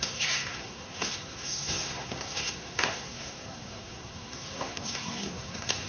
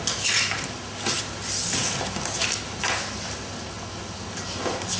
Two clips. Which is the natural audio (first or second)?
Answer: second